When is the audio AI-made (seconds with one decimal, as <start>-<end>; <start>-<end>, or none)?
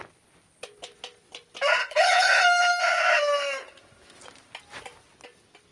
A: 1.8-2.4